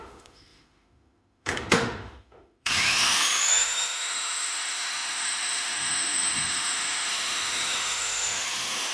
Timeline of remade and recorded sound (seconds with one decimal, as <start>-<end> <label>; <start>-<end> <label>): 0.0-8.9 remade